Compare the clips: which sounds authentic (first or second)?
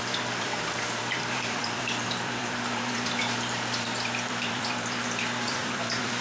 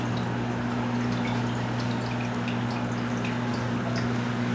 second